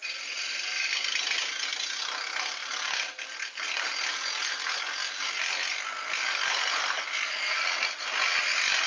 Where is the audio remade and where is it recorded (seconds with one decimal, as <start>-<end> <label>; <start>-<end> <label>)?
0.0-8.9 recorded